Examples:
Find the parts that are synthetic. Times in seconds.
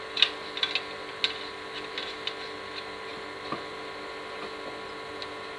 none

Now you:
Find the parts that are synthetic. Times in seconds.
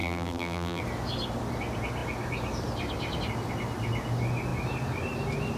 0.0-0.8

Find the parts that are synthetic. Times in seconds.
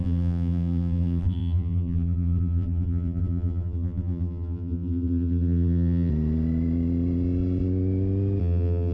0.0-6.1; 8.4-8.9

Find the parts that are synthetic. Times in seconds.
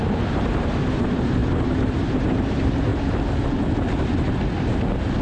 0.0-2.9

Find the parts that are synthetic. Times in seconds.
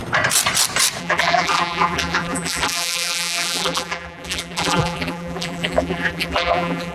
1.0-6.9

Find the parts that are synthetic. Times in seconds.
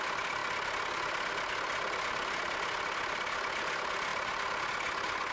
none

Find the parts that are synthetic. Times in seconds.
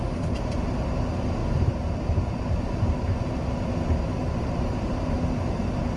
1.4-3.7; 4.2-4.9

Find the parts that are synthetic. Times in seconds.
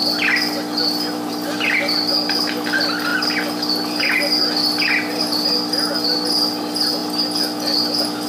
1.3-8.3